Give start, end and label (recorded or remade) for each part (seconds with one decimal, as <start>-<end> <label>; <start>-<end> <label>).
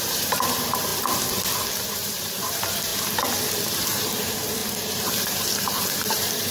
0.0-0.9 remade; 0.9-1.8 recorded; 1.8-2.9 remade; 2.9-3.5 recorded; 3.5-6.5 remade